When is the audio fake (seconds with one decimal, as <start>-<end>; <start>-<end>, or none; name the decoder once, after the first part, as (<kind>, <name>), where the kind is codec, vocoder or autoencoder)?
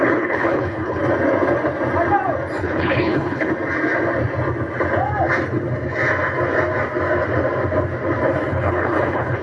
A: 0.0-1.0 (codec, HILCodec); 2.6-3.5; 8.5-9.4